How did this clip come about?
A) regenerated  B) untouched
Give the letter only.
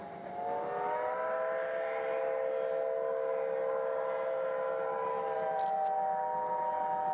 B